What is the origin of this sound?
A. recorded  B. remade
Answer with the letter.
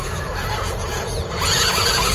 B